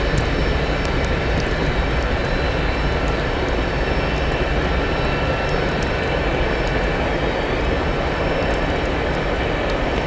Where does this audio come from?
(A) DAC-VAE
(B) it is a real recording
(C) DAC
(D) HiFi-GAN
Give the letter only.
B